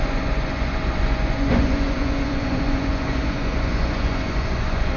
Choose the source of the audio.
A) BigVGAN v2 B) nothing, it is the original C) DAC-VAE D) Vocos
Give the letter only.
D